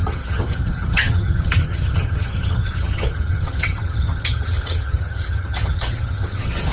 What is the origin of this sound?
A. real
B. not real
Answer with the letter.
B